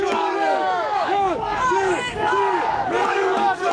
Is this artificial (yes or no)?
yes